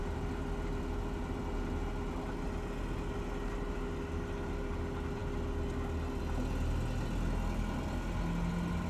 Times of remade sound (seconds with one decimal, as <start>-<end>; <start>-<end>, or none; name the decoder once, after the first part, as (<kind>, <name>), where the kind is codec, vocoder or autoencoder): none